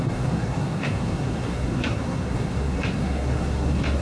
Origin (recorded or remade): remade